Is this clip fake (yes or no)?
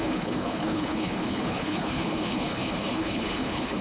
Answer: yes